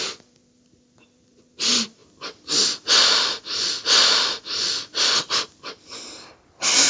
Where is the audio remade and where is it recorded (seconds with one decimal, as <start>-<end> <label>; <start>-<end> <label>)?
0.0-6.9 recorded